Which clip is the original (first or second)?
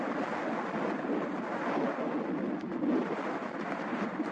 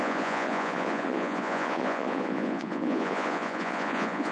first